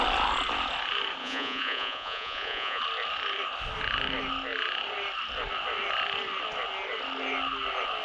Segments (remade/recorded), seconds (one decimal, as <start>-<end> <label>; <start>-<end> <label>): 0.0-1.2 recorded; 1.2-2.8 remade; 2.8-8.0 recorded